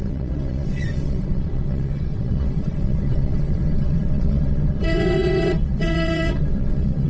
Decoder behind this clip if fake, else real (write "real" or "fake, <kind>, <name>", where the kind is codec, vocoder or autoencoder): fake, vocoder, WaveNeXt